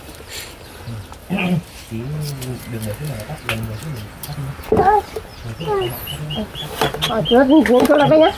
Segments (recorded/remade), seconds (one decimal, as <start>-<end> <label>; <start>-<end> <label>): 0.0-1.2 remade; 1.2-4.5 recorded; 4.5-5.3 remade; 5.3-8.4 recorded